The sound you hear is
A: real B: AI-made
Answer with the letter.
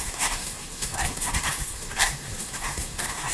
B